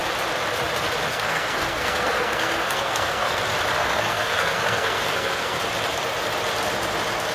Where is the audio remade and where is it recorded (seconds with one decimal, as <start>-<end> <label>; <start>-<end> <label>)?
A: 0.0-1.1 recorded; 1.1-3.4 remade; 3.4-3.8 recorded; 3.8-5.6 remade; 5.6-7.3 recorded